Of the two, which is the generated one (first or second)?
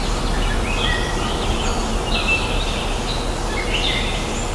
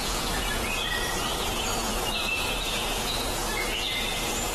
second